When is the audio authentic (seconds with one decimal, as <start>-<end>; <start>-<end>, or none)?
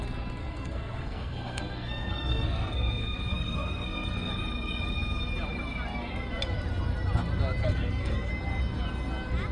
0.0-0.4; 4.3-7.6; 8.3-9.5